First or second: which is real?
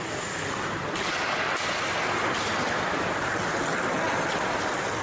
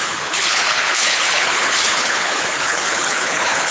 first